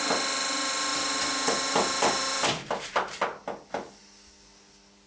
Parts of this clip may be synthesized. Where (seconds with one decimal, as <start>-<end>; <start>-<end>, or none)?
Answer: 0.9-4.0